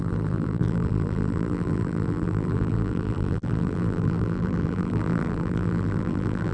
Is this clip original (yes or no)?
no